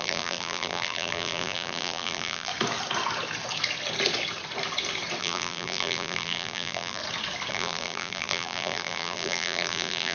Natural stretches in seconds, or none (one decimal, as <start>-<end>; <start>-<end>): 2.5-5.2; 7.0-7.5